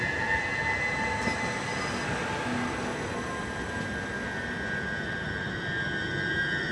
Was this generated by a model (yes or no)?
no